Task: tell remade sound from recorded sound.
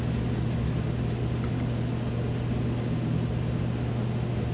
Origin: recorded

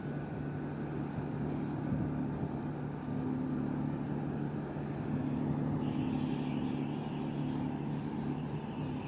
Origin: recorded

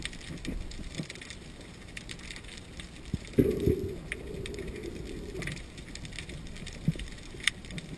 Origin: recorded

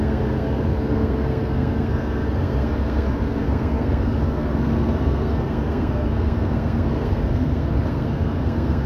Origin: remade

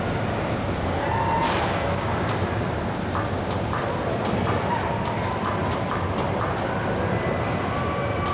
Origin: recorded